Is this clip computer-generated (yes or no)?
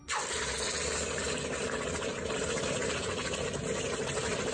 no